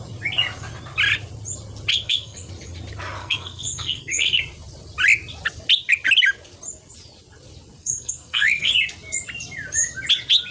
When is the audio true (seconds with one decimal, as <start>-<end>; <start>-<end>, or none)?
0.0-1.9; 2.5-3.2; 4.4-7.8; 8.7-10.5